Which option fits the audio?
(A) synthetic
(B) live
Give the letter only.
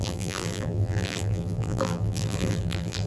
A